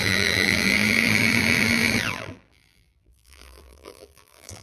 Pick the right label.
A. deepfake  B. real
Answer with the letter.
A